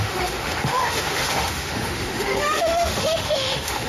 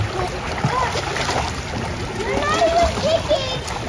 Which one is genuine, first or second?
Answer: second